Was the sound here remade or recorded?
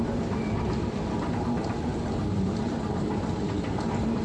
remade